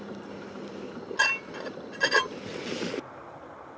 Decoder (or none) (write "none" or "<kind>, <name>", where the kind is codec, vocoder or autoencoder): none